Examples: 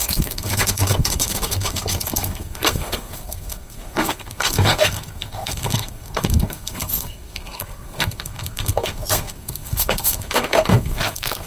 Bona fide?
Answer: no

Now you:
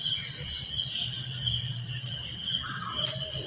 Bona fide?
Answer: yes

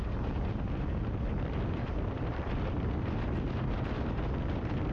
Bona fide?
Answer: yes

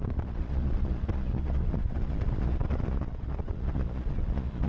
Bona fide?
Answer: no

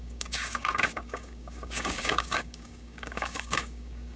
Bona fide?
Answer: no